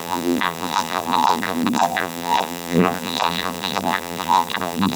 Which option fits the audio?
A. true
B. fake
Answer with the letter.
B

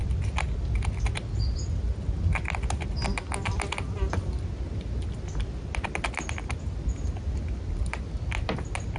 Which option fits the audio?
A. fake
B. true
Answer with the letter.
B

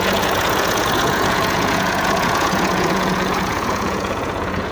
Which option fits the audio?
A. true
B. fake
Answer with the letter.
B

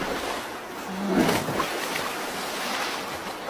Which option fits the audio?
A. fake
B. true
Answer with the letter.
B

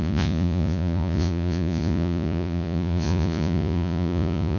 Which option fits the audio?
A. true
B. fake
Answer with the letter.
B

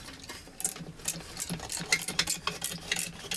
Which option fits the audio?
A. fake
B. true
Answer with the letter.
B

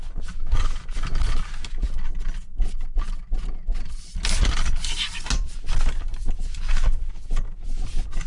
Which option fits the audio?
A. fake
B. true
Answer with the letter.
B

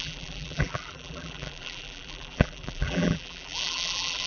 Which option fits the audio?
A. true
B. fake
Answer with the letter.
B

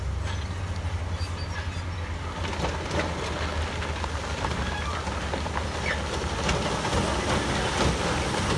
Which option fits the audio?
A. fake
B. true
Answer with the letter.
B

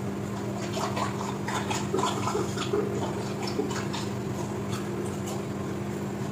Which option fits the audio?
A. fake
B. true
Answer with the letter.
B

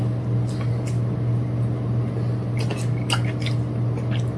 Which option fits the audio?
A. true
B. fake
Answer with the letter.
A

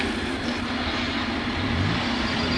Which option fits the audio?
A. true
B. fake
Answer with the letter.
A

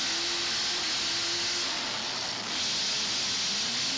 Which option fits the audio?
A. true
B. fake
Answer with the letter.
A